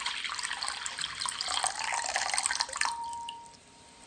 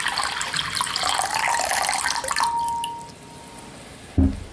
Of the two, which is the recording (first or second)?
second